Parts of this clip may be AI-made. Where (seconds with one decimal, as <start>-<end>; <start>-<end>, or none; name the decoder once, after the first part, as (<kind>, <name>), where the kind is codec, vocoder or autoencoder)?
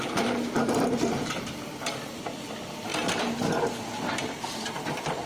0.0-2.9 (vocoder, BigVGAN v2); 3.7-5.3